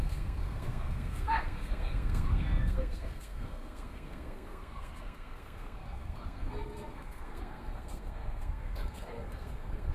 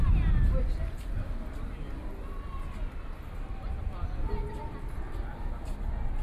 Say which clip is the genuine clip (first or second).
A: second